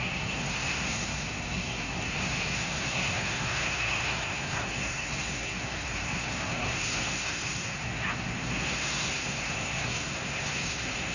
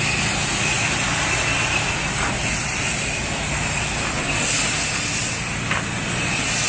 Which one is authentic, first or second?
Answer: second